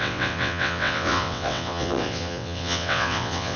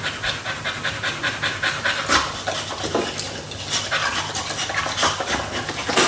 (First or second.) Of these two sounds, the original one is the second